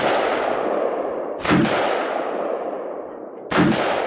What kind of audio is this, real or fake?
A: fake